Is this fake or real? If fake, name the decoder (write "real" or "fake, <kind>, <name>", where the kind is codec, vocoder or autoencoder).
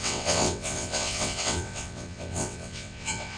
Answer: fake, vocoder, WaveNeXt